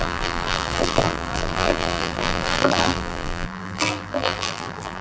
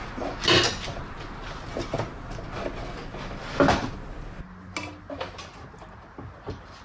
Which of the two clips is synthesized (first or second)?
first